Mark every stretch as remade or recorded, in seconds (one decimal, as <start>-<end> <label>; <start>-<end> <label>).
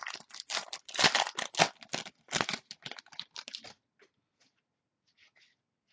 0.0-5.9 recorded